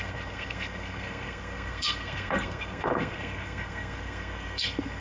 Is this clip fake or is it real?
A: fake